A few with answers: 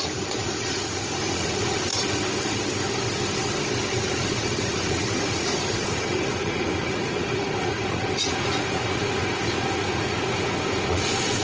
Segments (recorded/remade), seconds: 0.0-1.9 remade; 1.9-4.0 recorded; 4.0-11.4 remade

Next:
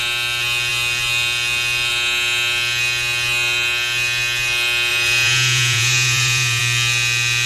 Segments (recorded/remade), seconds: 0.0-4.9 recorded; 4.9-6.6 remade; 6.6-7.5 recorded